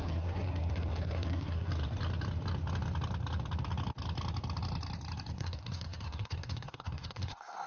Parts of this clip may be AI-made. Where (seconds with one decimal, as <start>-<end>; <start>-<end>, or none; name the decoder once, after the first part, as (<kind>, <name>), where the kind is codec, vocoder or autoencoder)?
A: 0.0-1.7 (codec, SNAC); 5.3-7.7